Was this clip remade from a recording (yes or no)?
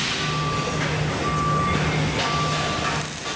no